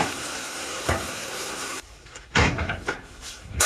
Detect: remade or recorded remade